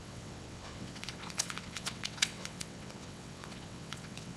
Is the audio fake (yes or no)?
yes